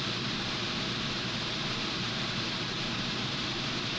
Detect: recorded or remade remade